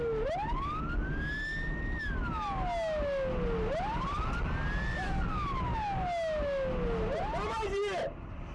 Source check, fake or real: real